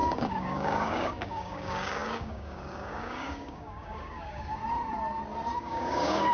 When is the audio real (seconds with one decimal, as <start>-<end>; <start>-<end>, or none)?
4.6-5.6